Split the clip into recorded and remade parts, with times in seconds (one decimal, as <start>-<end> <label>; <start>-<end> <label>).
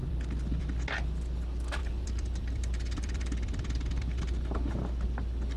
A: 0.0-0.7 remade; 0.7-1.8 recorded; 1.8-4.2 remade; 4.2-5.6 recorded